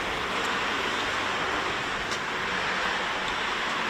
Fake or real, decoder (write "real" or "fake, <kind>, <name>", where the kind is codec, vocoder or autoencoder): real